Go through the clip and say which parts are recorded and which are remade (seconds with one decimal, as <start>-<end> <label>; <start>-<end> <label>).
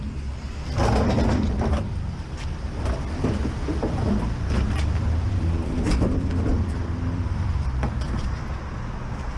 0.0-3.7 recorded; 3.7-8.7 remade; 8.7-9.4 recorded